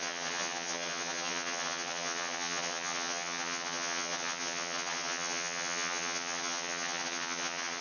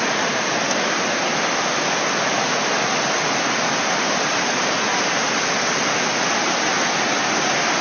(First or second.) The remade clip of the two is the first